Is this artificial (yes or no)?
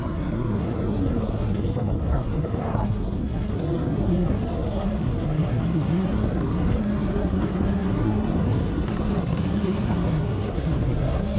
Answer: yes